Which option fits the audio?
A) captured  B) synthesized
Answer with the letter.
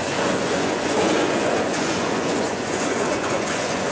B